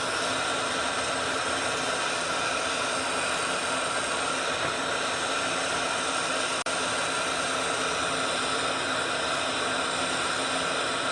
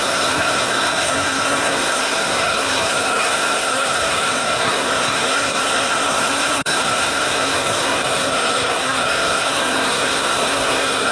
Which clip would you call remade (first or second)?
second